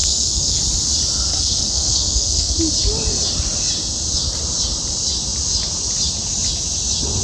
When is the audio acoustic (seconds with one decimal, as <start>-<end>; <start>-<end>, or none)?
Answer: 0.6-1.3; 2.6-7.2